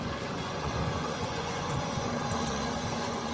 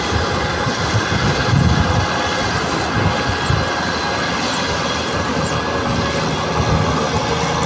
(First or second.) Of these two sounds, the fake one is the first